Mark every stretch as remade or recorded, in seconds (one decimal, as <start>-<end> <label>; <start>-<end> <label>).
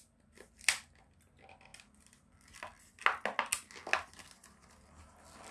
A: 0.0-5.5 recorded